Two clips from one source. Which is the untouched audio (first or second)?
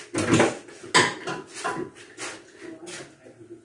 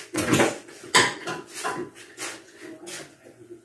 first